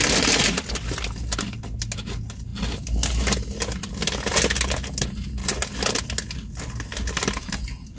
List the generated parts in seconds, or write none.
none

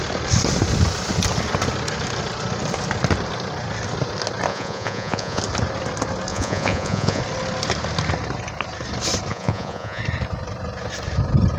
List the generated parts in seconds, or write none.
4.5-5.4 (vocoder, Vocos); 6.3-7.2; 9.3-10.0

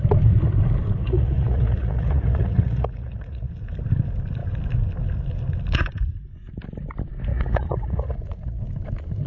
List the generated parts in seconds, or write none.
1.0-3.5 (vocoder, Vocos); 7.3-8.6

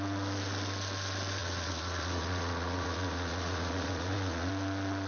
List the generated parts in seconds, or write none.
1.4-4.5 (vocoder, Vocos)

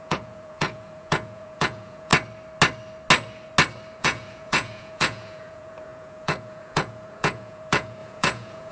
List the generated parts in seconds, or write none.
0.0-2.1 (vocoder, Vocos); 4.0-8.7

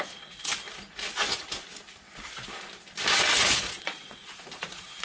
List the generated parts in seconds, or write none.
0.0-0.5 (vocoder, Vocos); 3.5-5.0

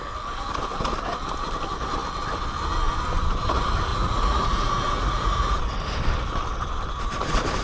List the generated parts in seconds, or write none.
3.9-5.6 (vocoder, Vocos)

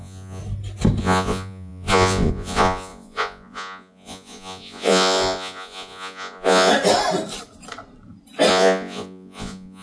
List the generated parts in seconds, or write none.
0.0-0.4 (vocoder, Vocos); 1.0-6.7; 8.5-9.8